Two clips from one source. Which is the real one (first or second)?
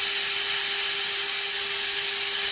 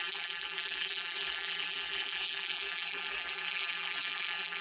first